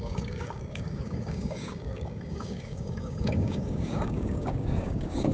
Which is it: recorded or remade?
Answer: remade